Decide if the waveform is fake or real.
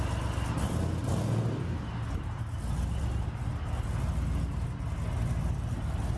real